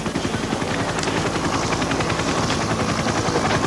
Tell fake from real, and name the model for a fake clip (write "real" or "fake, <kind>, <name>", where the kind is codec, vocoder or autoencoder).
real